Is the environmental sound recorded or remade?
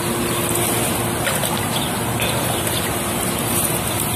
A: recorded